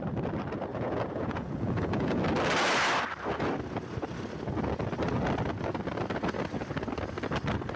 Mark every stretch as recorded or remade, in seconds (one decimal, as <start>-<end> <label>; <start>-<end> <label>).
0.0-0.7 recorded; 0.7-2.2 remade; 2.2-7.8 recorded

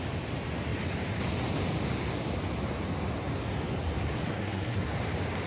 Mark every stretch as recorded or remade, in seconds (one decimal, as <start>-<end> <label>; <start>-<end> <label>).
0.0-4.3 recorded; 4.3-4.9 remade; 4.9-5.5 recorded

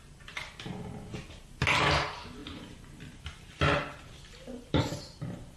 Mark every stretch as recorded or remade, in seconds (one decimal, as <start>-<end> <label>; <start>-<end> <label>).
0.0-5.6 recorded

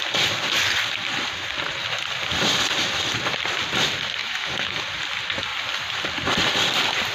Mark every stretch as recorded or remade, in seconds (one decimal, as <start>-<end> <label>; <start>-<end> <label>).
0.0-4.2 recorded; 4.2-4.8 remade; 4.8-7.1 recorded

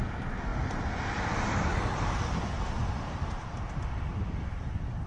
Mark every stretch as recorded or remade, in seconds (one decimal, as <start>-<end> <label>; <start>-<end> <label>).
0.0-5.1 recorded

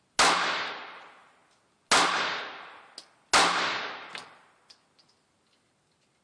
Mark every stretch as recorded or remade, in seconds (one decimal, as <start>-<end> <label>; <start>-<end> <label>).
0.0-6.2 recorded

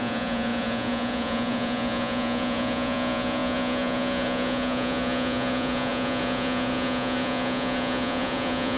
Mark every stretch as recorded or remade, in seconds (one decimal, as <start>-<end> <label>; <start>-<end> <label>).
0.0-8.8 remade